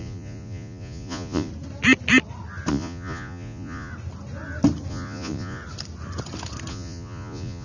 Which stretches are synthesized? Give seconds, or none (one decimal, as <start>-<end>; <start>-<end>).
0.0-1.5; 2.7-3.9; 4.9-5.6; 6.7-7.6